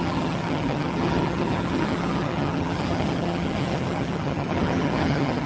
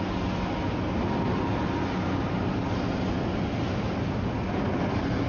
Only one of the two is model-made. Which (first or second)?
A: first